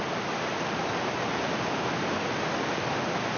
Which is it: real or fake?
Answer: real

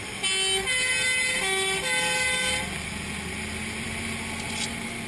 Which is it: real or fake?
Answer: real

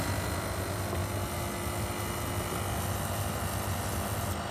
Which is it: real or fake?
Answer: real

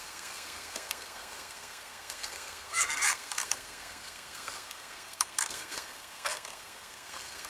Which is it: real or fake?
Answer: fake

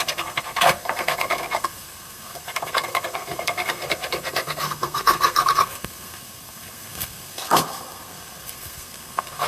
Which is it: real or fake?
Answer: fake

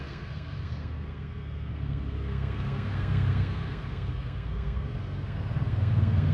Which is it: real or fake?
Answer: fake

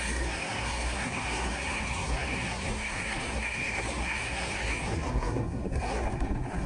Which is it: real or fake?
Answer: fake